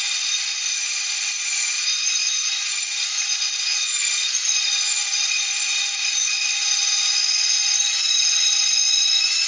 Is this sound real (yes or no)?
no